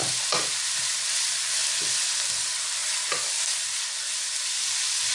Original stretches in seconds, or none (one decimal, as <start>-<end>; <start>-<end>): 0.9-1.6; 2.4-2.8; 3.8-5.1